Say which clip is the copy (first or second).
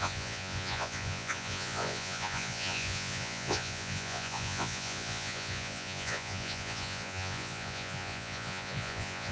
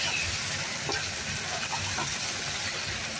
first